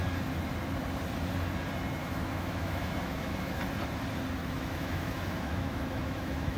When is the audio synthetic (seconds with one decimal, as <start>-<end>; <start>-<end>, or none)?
2.0-3.6; 4.4-6.6